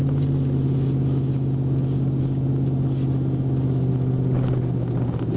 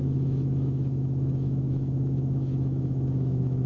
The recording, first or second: first